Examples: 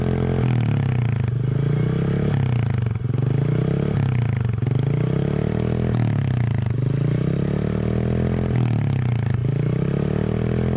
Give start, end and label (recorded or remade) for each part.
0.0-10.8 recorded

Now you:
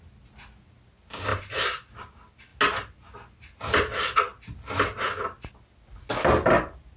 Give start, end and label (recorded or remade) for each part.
0.0-1.3 recorded; 1.3-1.9 remade; 1.9-7.0 recorded

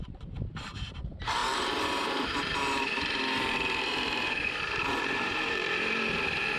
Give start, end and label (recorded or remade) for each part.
0.0-6.6 remade

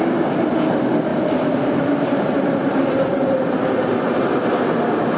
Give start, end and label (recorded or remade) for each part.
0.0-1.1 recorded; 1.1-4.2 remade; 4.2-5.2 recorded

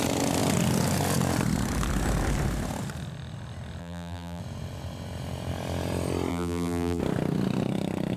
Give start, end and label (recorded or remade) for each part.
0.0-3.8 recorded; 3.8-4.4 remade; 4.4-6.3 recorded; 6.3-7.0 remade; 7.0-8.2 recorded

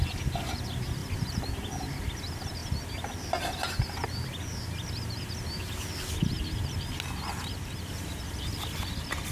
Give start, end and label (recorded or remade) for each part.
0.0-1.0 recorded; 1.0-1.5 remade; 1.5-9.3 recorded

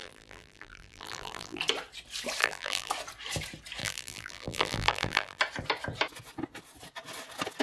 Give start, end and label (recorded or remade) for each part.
0.0-1.6 remade; 1.6-2.4 recorded; 2.4-2.9 remade; 2.9-3.8 recorded; 3.8-5.4 remade; 5.4-7.6 recorded

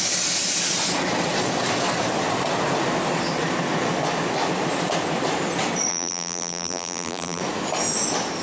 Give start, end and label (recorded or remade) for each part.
0.0-5.9 recorded; 5.9-7.4 remade; 7.4-8.4 recorded